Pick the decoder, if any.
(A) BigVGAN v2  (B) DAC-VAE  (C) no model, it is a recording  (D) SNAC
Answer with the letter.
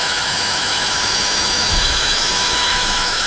B